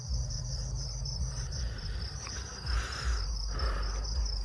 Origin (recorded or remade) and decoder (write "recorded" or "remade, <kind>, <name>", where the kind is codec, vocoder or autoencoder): remade, vocoder, BigVGAN v2